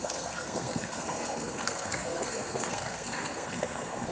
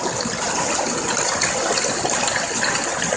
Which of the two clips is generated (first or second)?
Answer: first